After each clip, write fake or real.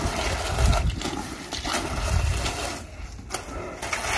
real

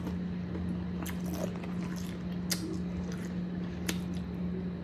real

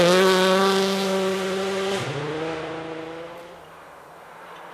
real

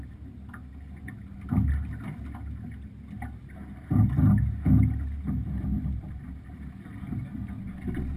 real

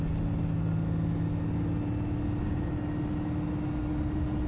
real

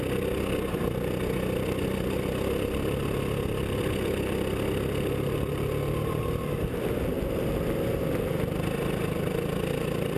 real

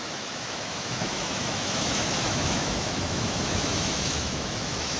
fake